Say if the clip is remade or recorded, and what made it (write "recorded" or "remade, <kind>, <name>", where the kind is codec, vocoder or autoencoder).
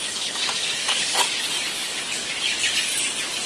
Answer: remade, codec, DAC